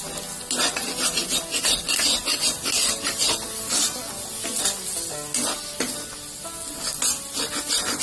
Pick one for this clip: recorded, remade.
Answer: recorded